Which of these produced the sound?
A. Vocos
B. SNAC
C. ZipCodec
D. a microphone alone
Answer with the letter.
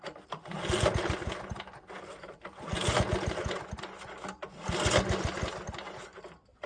D